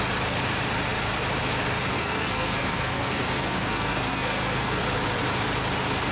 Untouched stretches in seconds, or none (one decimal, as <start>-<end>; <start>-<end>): 0.0-1.9; 4.8-6.1